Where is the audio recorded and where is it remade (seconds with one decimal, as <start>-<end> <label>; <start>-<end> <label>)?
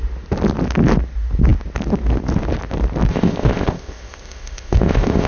0.0-3.1 recorded; 3.1-5.3 remade